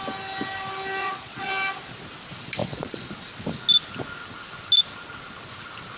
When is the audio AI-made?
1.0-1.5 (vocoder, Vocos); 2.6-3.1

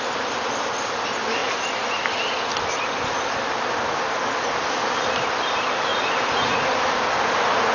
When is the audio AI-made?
5.9-6.6 (vocoder, Vocos)